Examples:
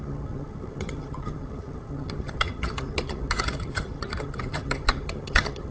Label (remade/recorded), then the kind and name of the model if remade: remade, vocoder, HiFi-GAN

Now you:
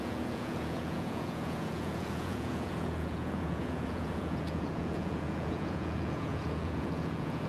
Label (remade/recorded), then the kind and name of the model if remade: remade, vocoder, Vocos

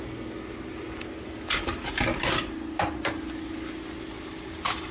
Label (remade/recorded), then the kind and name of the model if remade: recorded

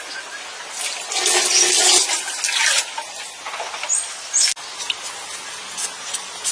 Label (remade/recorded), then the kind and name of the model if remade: recorded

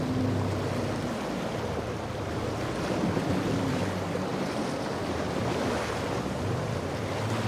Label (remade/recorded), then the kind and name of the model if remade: recorded